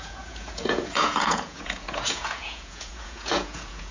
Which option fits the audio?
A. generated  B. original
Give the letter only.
A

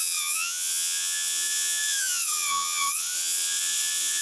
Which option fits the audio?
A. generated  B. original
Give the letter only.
A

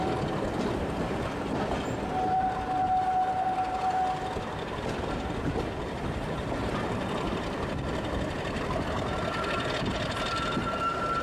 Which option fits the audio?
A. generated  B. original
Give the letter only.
B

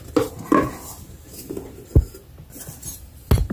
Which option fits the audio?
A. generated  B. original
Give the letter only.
B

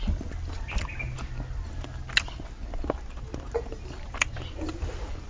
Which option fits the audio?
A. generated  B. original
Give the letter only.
B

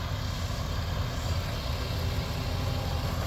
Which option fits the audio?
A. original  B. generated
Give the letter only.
A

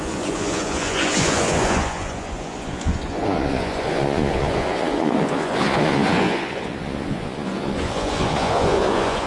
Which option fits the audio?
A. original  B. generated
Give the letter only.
B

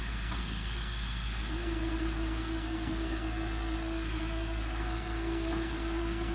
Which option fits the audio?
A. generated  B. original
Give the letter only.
A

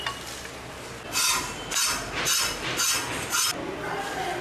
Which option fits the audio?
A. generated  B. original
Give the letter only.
B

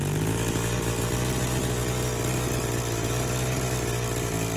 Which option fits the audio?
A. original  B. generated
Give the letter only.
A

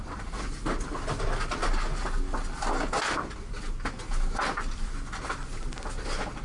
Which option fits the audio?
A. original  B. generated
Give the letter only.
A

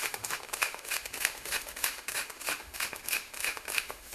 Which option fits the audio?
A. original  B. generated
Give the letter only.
B